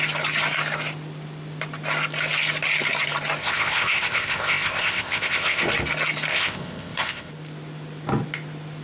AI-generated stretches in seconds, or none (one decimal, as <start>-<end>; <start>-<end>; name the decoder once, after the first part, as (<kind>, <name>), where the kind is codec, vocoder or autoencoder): 3.4-5.7 (codec, ZipCodec); 6.3-7.3